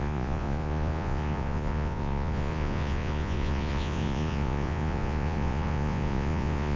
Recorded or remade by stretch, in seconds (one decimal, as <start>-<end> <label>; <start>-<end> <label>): 0.0-6.8 remade

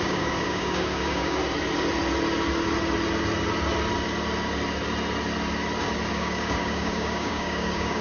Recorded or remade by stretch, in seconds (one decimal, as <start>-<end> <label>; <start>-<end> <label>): 0.0-1.4 remade; 1.4-6.1 recorded; 6.1-8.0 remade

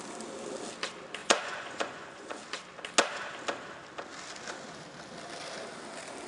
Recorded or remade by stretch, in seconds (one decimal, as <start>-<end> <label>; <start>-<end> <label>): 0.0-1.2 recorded; 1.2-2.4 remade; 2.4-6.3 recorded

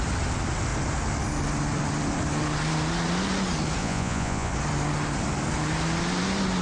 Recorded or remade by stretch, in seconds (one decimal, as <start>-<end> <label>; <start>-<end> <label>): 0.0-3.8 recorded; 3.8-4.5 remade; 4.5-6.6 recorded

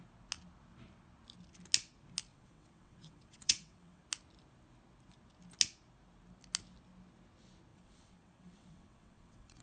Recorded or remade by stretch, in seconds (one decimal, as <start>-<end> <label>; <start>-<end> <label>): 0.0-2.3 recorded; 2.3-4.0 remade; 4.0-7.7 recorded; 7.7-9.6 remade